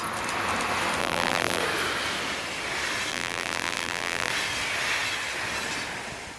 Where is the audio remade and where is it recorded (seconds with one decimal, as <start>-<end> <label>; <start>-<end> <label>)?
0.0-1.0 recorded; 1.0-1.6 remade; 1.6-3.1 recorded; 3.1-4.3 remade; 4.3-6.4 recorded